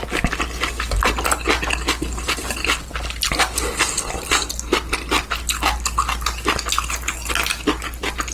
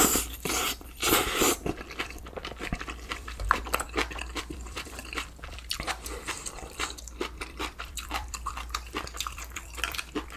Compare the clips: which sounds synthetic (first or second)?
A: second